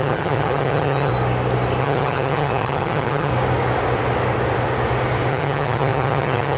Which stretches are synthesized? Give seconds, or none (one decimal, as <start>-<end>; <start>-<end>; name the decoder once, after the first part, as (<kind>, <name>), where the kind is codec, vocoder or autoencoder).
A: 0.0-1.1 (vocoder, HiFi-GAN); 1.8-3.3; 5.3-6.6